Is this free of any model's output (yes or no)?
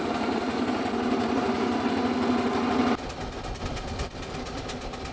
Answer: yes